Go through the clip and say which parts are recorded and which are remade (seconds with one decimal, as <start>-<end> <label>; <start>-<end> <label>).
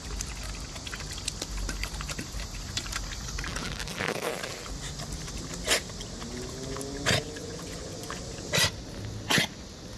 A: 0.0-7.4 recorded; 7.4-8.2 remade; 8.2-10.0 recorded